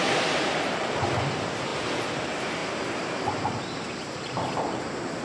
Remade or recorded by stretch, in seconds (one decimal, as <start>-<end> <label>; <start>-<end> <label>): 0.0-2.6 remade; 2.6-4.8 recorded; 4.8-5.2 remade